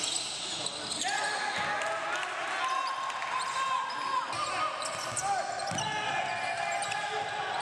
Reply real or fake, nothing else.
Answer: real